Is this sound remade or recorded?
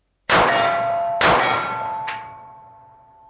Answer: recorded